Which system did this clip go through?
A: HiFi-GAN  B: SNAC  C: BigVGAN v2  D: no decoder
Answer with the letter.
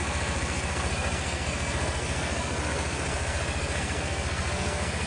B